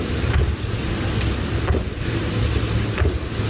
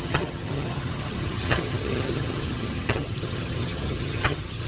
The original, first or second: first